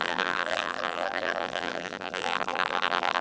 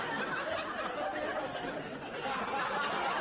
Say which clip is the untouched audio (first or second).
second